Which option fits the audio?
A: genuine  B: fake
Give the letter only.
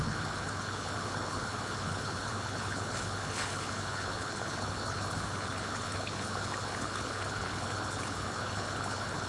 B